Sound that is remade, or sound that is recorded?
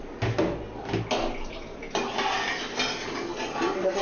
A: recorded